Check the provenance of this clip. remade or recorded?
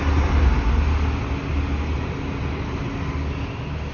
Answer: recorded